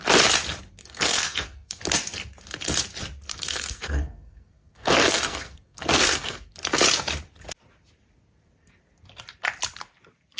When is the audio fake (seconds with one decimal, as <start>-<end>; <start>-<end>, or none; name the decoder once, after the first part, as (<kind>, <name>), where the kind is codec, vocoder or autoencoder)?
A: 0.8-1.8 (codec, SNAC); 3.3-6.5